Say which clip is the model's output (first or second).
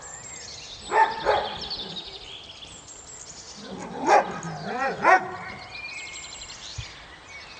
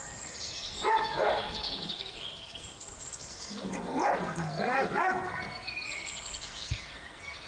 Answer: second